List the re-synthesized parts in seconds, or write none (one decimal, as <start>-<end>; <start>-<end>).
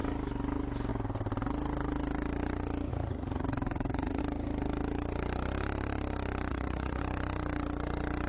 2.9-4.2; 6.5-7.0